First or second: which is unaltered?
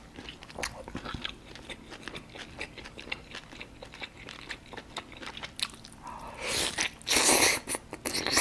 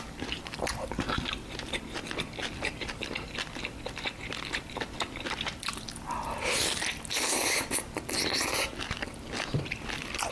first